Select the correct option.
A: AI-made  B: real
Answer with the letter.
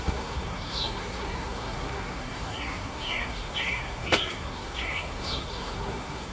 A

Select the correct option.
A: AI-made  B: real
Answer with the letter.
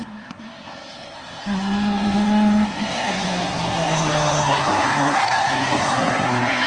A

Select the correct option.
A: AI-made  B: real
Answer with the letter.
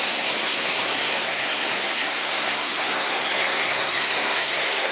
A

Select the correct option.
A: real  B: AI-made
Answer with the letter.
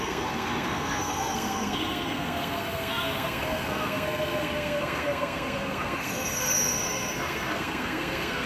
B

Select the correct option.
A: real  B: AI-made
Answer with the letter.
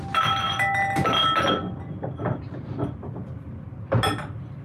A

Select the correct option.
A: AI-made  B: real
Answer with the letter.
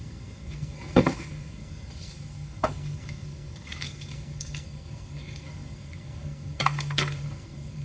A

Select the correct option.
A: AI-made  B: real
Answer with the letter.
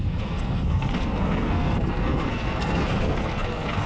A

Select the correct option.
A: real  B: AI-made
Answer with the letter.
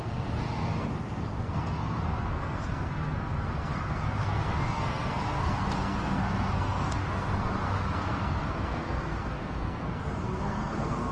B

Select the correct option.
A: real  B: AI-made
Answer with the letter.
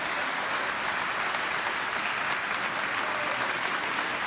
A